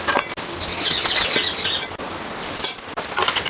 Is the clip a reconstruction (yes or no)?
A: no